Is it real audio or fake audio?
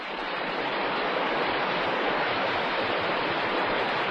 real